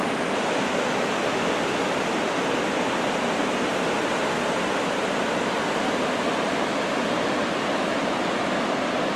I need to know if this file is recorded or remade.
recorded